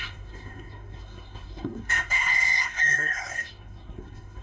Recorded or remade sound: remade